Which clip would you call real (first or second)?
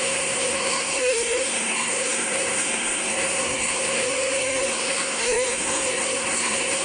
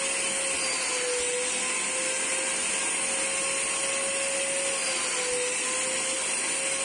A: second